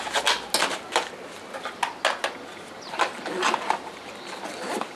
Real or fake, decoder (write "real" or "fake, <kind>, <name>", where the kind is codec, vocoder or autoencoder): real